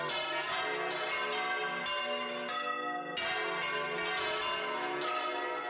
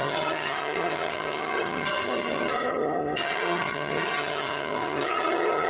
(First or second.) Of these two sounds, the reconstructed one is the second